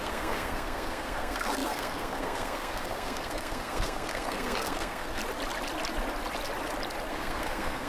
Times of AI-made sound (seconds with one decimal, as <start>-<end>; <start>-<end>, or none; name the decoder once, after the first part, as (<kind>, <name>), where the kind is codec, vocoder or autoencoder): 0.0-5.2 (codec, SNAC); 7.1-7.9